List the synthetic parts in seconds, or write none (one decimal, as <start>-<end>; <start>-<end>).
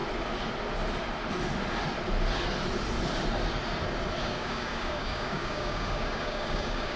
4.2-7.0